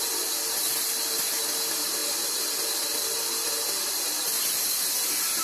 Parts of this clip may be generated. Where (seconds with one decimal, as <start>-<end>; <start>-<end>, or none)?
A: none